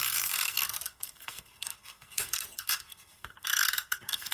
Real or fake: fake